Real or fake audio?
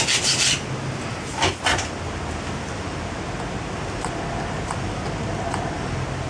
real